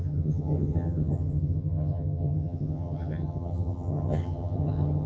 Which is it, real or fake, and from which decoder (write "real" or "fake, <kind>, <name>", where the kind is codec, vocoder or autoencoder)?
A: fake, vocoder, HiFi-GAN